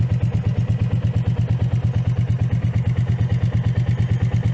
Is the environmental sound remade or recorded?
recorded